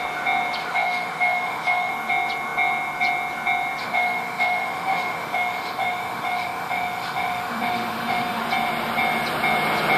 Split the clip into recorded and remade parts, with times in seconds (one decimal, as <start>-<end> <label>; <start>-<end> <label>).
0.0-0.6 recorded; 0.6-1.9 remade; 1.9-3.8 recorded; 3.8-8.4 remade; 8.4-10.0 recorded